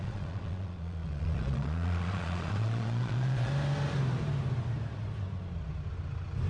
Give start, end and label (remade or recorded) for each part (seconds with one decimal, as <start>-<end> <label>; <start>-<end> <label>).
0.0-3.5 remade; 3.5-6.5 recorded